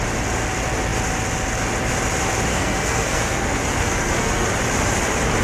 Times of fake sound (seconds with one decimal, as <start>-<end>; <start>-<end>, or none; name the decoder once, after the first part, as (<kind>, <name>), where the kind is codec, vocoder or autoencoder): 2.5-4.5 (codec, SNAC)